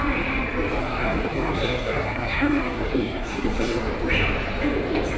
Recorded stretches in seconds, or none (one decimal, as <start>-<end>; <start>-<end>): 0.0-0.8; 3.9-5.2